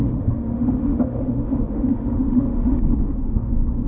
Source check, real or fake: fake